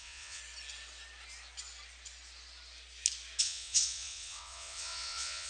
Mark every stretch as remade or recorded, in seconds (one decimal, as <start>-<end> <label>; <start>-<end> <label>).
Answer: 0.0-0.4 remade; 0.4-3.4 recorded; 3.4-5.5 remade